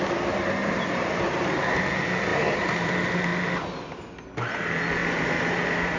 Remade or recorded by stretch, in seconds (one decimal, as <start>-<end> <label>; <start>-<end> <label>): 0.0-0.6 recorded; 0.6-1.2 remade; 1.2-2.3 recorded; 2.3-2.9 remade; 2.9-5.0 recorded; 5.0-6.0 remade